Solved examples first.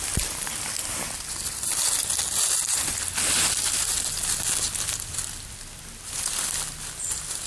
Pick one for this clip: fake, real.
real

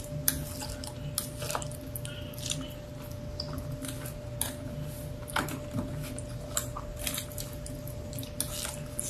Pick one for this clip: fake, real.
real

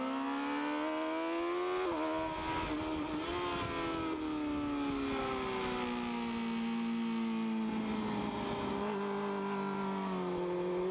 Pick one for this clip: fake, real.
real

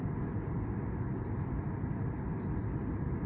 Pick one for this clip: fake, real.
real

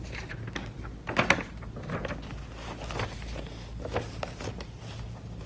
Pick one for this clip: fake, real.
real